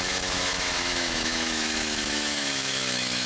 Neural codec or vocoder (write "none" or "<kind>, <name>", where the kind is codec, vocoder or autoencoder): autoencoder, DAC-VAE